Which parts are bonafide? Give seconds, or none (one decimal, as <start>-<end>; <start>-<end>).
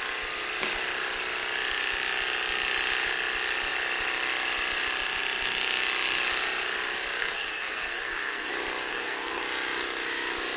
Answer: 0.0-7.2; 8.5-8.9; 9.4-10.6